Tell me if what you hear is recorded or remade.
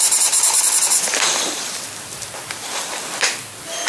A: remade